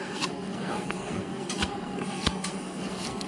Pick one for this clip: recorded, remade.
remade